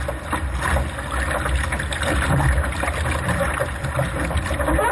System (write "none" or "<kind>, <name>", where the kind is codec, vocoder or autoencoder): none